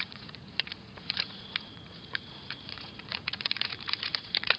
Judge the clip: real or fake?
fake